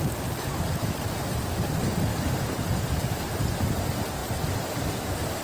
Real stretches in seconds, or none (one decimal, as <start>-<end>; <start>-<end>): 0.0-2.1; 2.9-5.4